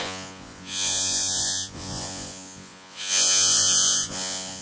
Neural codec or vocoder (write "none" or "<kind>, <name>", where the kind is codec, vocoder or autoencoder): vocoder, Vocos